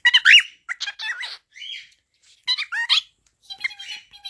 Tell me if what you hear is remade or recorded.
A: recorded